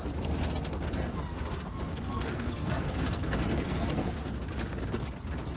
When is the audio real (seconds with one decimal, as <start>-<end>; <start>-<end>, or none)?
0.0-1.9; 4.3-5.6